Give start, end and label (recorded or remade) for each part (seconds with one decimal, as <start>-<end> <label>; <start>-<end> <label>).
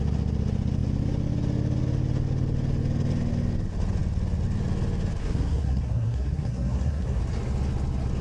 0.0-5.2 recorded; 5.2-7.2 remade; 7.2-8.2 recorded